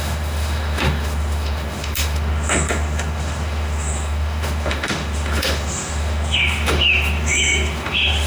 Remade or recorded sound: remade